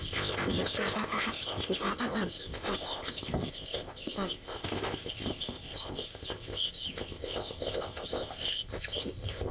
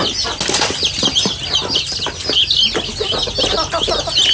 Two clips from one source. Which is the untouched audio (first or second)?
second